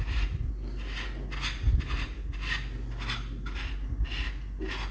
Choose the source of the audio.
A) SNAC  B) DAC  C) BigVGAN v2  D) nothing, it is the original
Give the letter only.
D